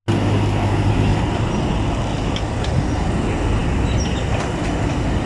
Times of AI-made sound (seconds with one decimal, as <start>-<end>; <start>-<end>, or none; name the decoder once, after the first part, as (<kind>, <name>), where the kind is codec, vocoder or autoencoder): none

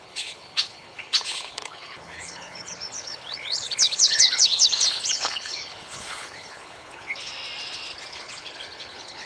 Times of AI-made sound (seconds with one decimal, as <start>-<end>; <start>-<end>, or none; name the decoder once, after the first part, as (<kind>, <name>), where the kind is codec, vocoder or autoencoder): 0.0-7.3 (codec, HILCodec); 8.1-9.3